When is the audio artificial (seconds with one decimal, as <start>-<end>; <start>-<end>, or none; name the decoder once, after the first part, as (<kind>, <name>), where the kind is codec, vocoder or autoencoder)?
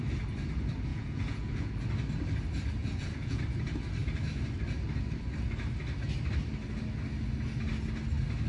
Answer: 0.9-1.7 (vocoder, Vocos); 2.8-3.4